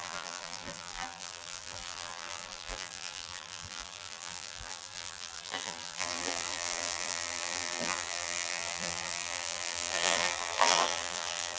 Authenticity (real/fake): fake